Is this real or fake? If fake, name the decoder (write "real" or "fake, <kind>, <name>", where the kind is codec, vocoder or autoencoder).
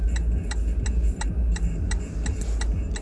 real